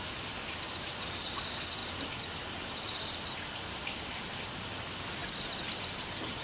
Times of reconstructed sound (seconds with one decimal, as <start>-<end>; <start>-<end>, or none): none